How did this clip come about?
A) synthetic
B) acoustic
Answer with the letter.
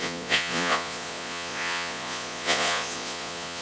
A